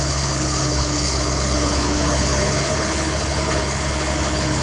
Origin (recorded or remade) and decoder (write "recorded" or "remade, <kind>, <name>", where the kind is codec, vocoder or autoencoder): remade, codec, HILCodec